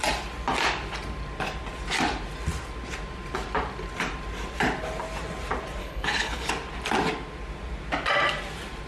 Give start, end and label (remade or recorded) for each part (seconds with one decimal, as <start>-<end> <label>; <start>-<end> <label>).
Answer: 0.0-5.8 recorded; 5.8-6.5 remade; 6.5-8.9 recorded